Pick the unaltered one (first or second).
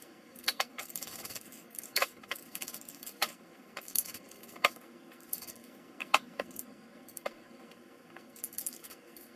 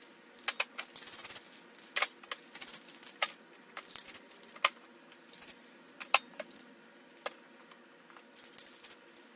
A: second